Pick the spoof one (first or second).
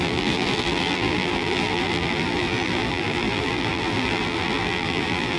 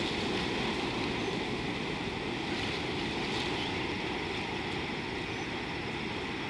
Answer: first